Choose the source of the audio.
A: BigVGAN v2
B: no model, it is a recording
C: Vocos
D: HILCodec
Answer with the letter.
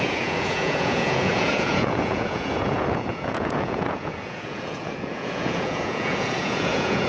C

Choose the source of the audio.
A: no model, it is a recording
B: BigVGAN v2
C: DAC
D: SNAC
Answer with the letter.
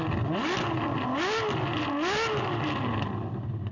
A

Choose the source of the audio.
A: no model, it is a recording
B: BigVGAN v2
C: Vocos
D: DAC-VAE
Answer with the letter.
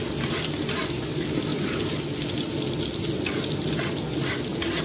A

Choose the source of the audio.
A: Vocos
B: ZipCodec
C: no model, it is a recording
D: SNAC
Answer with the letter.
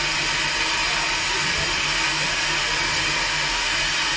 C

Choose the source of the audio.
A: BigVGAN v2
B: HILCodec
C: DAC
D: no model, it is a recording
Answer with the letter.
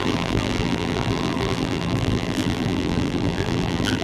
A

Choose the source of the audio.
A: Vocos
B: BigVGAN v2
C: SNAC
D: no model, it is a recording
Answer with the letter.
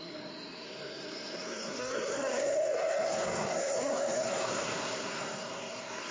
C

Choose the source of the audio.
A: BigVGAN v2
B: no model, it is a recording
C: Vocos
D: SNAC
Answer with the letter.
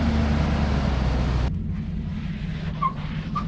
B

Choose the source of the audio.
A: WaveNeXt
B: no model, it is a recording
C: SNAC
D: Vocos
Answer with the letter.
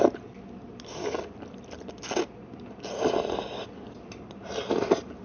B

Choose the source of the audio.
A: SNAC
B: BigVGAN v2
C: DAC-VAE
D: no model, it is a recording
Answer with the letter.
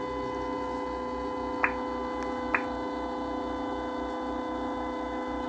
D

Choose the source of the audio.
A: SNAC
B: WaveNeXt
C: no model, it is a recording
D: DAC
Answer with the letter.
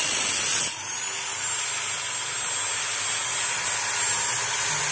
C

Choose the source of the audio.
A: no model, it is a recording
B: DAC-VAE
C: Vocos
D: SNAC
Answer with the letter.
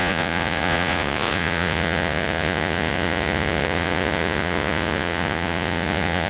C